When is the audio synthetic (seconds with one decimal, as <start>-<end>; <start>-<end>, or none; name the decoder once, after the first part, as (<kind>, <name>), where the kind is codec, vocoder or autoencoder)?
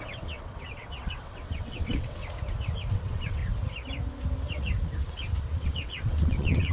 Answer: 0.0-2.2 (vocoder, WaveNeXt); 2.9-3.4; 5.5-6.7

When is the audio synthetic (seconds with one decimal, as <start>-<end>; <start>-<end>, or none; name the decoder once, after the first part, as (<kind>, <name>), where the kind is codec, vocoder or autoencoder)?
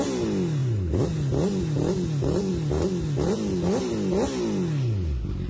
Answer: none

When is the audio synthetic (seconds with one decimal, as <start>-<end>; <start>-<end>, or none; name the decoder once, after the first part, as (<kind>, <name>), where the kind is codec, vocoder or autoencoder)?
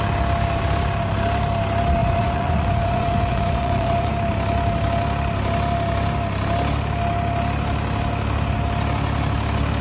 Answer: 2.0-4.1 (vocoder, Vocos)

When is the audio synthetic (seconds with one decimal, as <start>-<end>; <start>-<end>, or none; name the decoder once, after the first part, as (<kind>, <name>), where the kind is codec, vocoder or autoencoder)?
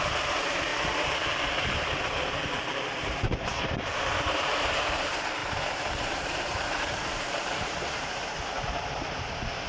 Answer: 0.0-0.7 (vocoder, BigVGAN v2); 1.6-2.4; 3.0-9.7